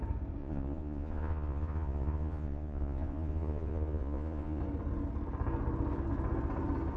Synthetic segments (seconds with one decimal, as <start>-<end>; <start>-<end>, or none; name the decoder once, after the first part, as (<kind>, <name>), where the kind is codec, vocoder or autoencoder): 0.4-4.6 (vocoder, Vocos)